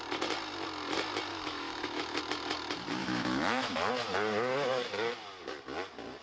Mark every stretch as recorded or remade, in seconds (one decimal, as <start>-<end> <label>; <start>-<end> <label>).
0.0-1.3 recorded; 1.3-2.2 remade; 2.2-3.0 recorded; 3.0-3.9 remade; 3.9-6.2 recorded